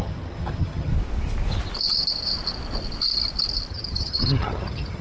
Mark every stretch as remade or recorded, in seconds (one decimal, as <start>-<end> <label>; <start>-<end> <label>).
0.0-0.9 remade; 0.9-3.7 recorded; 3.7-5.0 remade